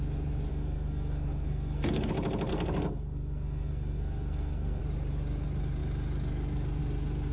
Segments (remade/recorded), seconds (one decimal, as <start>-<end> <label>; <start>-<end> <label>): 0.0-0.5 recorded; 0.5-2.1 remade; 2.1-2.5 recorded; 2.5-4.8 remade; 4.8-7.3 recorded